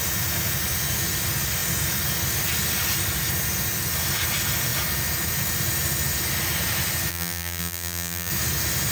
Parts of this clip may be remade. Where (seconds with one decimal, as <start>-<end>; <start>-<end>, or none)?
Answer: 7.1-8.3